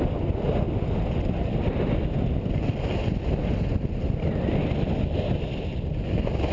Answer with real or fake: real